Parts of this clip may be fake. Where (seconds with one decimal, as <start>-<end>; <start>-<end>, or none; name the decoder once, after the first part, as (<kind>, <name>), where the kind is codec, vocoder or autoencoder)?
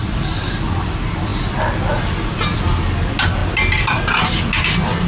0.0-0.5 (codec, DAC)